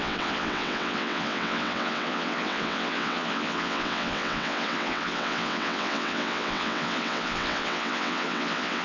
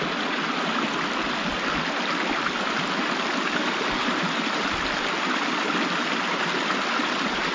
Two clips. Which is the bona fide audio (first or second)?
second